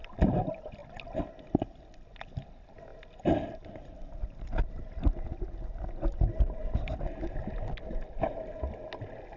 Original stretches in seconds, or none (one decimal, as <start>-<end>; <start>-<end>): 0.0-9.4

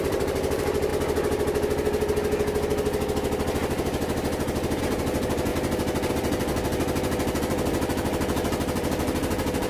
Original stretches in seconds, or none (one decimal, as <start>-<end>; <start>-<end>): 0.9-4.8; 5.5-6.1; 6.5-7.4

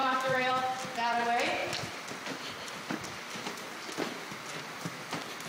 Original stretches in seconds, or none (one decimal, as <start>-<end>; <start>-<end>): 0.5-5.5

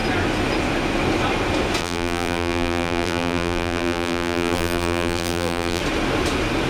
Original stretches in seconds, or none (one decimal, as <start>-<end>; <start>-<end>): 0.0-1.8; 5.8-6.7